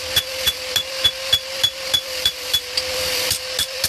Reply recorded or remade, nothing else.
remade